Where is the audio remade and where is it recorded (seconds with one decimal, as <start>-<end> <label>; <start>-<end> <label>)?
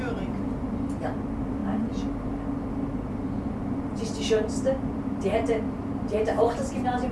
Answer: 0.0-7.1 recorded